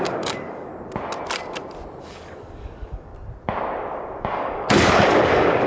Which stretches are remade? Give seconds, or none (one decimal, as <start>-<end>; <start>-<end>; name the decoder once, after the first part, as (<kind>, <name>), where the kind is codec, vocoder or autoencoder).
0.0-0.7 (codec, DAC); 2.0-3.1; 4.2-5.7